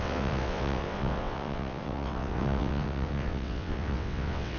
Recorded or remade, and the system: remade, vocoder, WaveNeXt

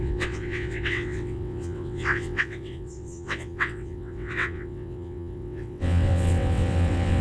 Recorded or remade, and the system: remade, vocoder, WaveNeXt